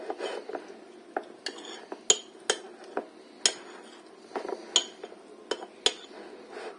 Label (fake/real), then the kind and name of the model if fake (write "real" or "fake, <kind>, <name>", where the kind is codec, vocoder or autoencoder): real